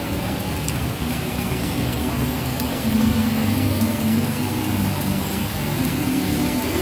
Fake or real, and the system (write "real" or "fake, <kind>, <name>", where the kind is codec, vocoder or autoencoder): fake, codec, SNAC